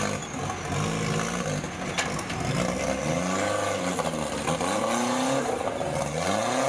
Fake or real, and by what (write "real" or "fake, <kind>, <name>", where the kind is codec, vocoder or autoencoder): real